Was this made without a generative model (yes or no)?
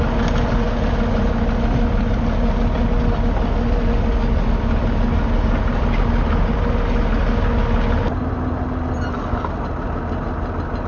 yes